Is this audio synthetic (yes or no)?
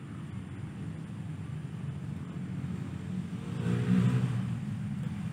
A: no